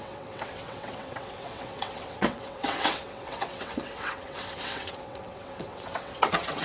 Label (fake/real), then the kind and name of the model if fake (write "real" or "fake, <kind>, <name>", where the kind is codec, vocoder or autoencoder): fake, vocoder, WaveNeXt